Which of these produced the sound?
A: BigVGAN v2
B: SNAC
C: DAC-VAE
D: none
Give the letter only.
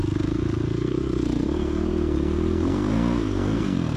B